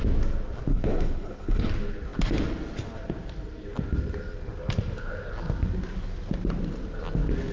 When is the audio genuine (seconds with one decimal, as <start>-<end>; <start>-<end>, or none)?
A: 0.0-0.7; 1.7-7.5